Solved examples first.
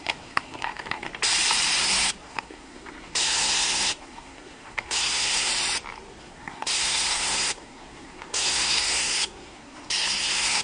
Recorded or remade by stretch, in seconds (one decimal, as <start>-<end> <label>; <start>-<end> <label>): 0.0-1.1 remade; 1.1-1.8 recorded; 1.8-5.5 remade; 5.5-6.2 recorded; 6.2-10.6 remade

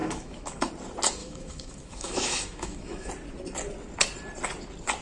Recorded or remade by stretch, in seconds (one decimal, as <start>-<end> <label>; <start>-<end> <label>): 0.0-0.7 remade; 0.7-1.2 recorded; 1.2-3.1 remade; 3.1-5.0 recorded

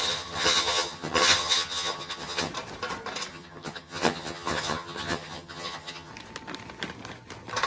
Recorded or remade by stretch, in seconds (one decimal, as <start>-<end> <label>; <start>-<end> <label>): 0.0-2.5 remade; 2.5-3.3 recorded; 3.3-6.1 remade; 6.1-7.7 recorded

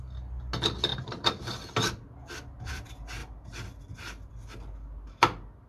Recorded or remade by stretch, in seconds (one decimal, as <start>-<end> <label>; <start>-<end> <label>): 0.0-0.9 recorded; 0.9-1.4 remade; 1.4-3.2 recorded; 3.2-4.3 remade; 4.3-5.7 recorded

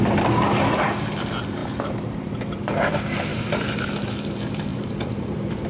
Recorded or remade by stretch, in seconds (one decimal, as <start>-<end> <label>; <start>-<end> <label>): 0.0-1.6 recorded; 1.6-2.6 remade; 2.6-3.3 recorded; 3.3-3.9 remade; 3.9-4.7 recorded; 4.7-5.7 remade

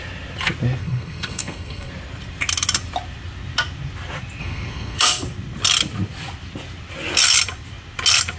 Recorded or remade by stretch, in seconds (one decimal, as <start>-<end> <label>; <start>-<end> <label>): 0.0-0.8 recorded; 0.8-1.9 remade; 1.9-4.4 recorded; 4.4-5.0 remade; 5.0-8.4 recorded

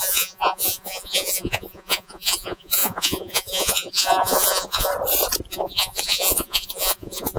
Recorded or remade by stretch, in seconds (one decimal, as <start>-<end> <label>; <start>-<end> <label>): 0.0-4.9 remade; 4.9-5.5 recorded; 5.5-7.4 remade